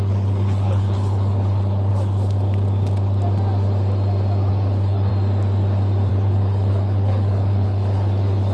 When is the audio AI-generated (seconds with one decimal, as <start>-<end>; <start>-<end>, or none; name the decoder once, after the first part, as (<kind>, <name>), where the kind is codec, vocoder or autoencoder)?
0.0-1.9 (codec, HILCodec); 4.5-5.1; 6.1-8.5